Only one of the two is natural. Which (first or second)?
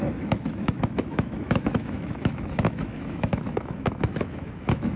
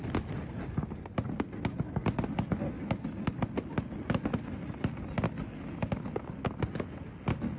second